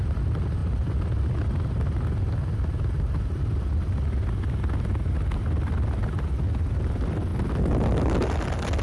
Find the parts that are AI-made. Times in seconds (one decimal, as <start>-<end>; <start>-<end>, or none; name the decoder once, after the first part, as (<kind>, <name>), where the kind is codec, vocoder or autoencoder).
none